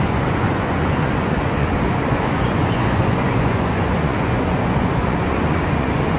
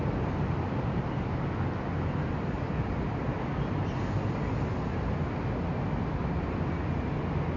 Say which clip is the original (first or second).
second